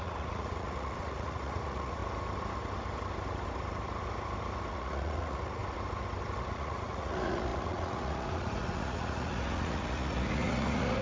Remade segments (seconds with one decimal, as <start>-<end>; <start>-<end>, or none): 0.0-2.0; 4.7-5.6; 6.4-11.0